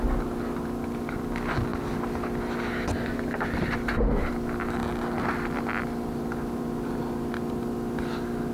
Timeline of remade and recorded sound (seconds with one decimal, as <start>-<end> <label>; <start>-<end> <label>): 0.0-8.5 recorded